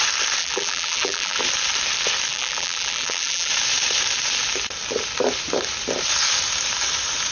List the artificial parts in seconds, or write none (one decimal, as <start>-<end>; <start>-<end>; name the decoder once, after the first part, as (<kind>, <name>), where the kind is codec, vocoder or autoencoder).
0.4-1.4 (vocoder, BigVGAN v2); 2.3-3.5